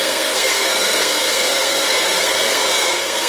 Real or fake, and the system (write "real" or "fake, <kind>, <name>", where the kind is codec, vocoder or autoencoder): fake, codec, SNAC